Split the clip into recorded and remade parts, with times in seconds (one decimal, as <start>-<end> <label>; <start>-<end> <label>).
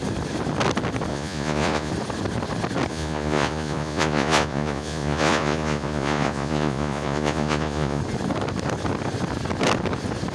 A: 0.0-1.1 recorded; 1.1-1.9 remade; 1.9-2.9 recorded; 2.9-8.0 remade; 8.0-10.3 recorded